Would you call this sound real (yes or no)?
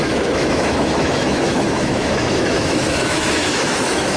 no